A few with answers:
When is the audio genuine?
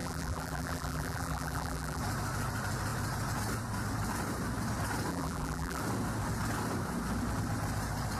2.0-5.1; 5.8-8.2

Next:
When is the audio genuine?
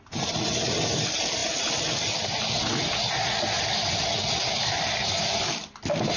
0.0-6.2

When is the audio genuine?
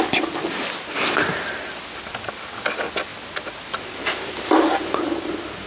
0.0-5.7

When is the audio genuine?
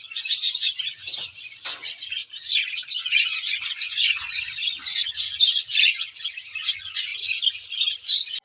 2.2-3.0; 7.1-8.4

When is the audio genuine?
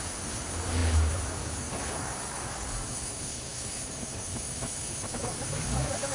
none